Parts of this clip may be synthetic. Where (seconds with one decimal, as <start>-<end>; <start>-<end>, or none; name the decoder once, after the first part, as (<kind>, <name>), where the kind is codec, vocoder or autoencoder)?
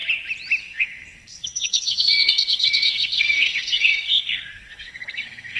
0.6-5.6 (codec, SNAC)